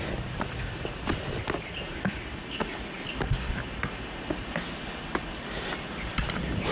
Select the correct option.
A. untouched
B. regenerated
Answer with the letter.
A